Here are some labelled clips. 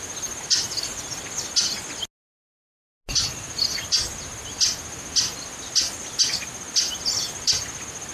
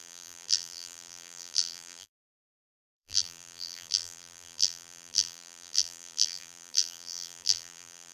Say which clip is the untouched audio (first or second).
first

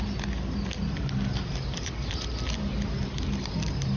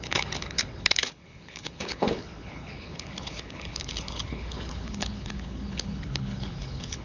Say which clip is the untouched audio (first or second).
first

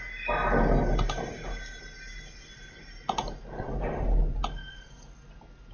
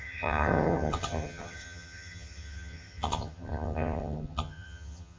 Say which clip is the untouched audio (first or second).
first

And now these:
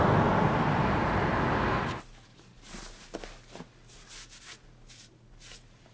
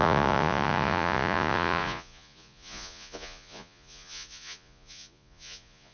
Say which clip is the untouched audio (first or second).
first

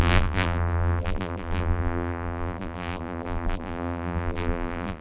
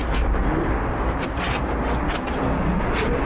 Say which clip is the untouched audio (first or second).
second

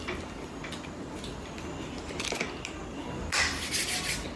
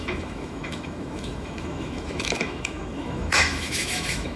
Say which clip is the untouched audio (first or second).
first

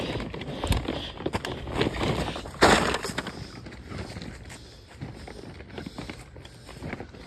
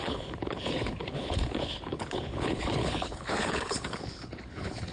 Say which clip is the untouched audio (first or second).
first